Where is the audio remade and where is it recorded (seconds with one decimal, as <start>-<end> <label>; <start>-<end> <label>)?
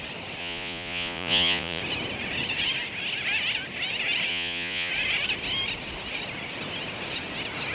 0.0-0.4 recorded; 0.4-1.8 remade; 1.8-4.3 recorded; 4.3-4.9 remade; 4.9-7.7 recorded